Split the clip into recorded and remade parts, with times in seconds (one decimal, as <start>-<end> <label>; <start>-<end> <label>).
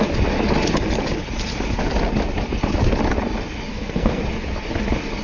0.0-3.7 recorded; 3.7-4.2 remade; 4.2-5.2 recorded